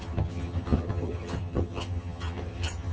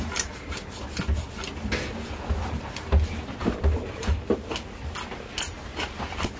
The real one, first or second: second